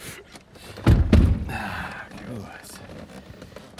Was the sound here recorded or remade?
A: recorded